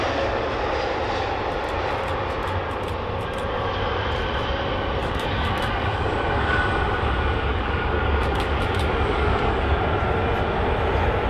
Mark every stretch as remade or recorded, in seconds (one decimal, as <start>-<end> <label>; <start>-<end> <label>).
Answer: 0.0-5.0 recorded; 5.0-6.6 remade; 6.6-7.5 recorded; 7.5-9.8 remade; 9.8-11.3 recorded